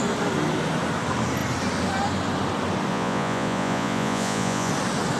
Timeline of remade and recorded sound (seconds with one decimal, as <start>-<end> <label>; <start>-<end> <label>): 0.0-2.9 recorded; 2.9-4.7 remade; 4.7-5.2 recorded